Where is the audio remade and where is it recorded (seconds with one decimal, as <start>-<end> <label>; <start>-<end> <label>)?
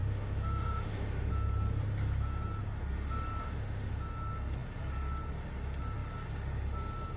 0.0-1.3 remade; 1.3-3.4 recorded; 3.4-3.9 remade; 3.9-7.2 recorded